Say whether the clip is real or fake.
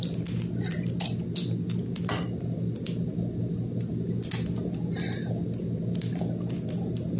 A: real